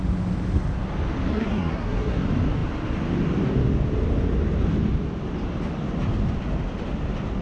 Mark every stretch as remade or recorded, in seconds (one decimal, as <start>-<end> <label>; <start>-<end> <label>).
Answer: 0.0-1.3 recorded; 1.3-2.2 remade; 2.2-7.4 recorded